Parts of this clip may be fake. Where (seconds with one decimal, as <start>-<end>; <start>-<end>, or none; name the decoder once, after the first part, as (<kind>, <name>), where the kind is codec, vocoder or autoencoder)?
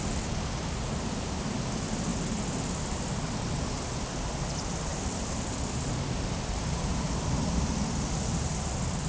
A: none